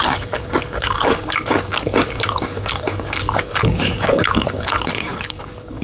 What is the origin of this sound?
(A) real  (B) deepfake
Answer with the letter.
B